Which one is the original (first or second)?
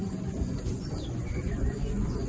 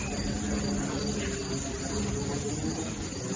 second